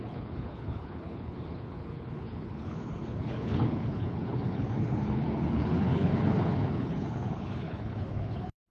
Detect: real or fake fake